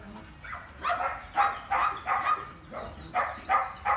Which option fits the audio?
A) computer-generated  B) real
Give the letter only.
B